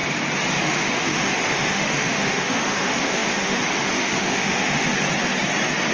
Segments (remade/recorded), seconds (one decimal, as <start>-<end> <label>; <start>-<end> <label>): 0.0-0.6 recorded; 0.6-4.9 remade; 4.9-5.9 recorded